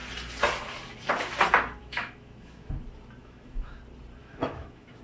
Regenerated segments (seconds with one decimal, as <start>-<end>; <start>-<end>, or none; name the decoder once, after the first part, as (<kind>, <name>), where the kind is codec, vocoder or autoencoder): 1.8-2.7 (autoencoder, DAC-VAE); 3.2-3.8; 4.2-5.0